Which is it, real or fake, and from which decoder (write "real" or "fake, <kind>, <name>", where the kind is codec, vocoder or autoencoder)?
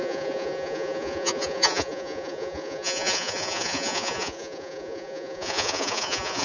fake, vocoder, Vocos